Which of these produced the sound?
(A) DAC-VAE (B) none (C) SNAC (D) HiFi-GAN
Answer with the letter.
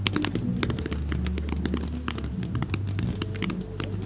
B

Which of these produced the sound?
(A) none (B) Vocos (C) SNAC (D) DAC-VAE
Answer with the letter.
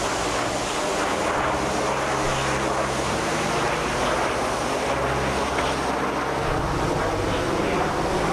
A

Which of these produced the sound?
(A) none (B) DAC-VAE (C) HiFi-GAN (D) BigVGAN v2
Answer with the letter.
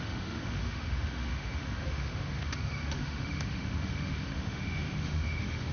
B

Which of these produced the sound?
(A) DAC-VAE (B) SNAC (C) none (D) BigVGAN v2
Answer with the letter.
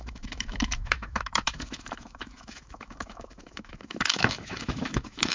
A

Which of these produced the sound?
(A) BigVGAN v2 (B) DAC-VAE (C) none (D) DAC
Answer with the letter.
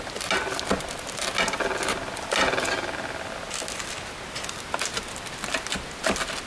C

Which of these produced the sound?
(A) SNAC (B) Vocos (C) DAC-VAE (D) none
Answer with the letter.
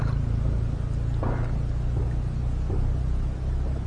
D